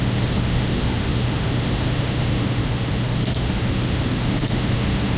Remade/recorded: remade